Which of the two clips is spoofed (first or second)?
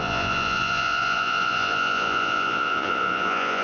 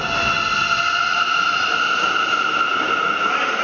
first